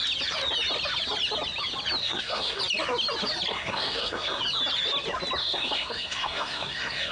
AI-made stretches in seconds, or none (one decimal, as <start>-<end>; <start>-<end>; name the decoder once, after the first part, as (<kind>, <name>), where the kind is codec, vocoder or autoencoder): 2.0-2.6 (codec, SNAC); 3.5-4.4; 5.4-7.1